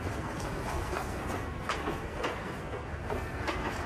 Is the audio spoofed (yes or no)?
yes